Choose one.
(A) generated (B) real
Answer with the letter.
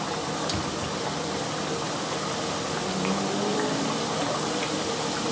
B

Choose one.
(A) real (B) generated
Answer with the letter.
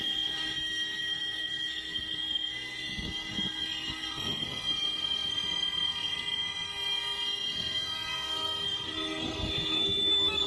B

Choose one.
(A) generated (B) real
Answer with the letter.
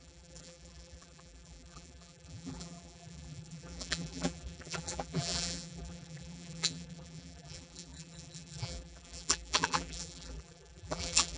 A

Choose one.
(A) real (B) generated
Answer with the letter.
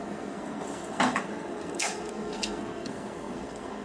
B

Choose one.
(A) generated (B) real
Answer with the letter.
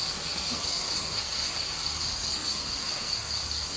A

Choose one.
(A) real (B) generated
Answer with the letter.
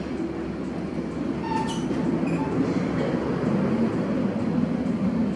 A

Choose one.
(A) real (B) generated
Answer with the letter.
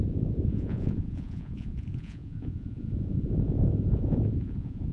B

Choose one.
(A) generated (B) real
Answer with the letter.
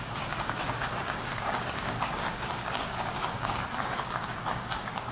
A